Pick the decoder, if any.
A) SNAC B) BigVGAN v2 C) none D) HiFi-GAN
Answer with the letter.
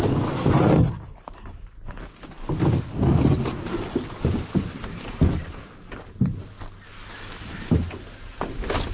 C